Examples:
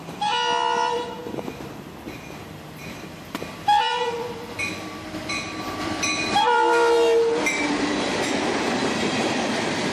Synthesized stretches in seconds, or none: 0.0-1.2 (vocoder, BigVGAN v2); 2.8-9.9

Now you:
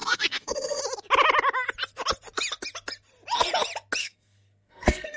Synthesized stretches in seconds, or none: 0.0-0.8 (codec, SNAC); 4.0-5.2